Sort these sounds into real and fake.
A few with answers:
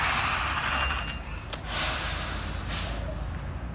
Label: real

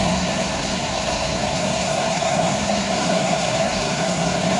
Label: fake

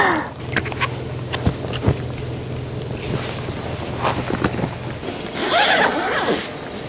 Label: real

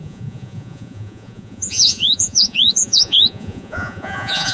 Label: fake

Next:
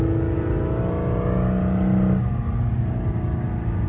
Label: real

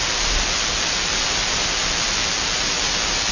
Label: real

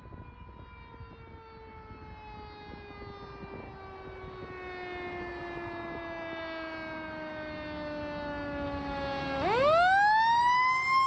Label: real